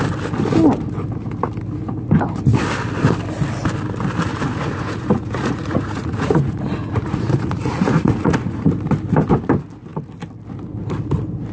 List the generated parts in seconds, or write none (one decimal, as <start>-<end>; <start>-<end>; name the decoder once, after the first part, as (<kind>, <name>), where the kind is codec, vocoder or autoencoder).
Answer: 4.3-8.7 (vocoder, Vocos)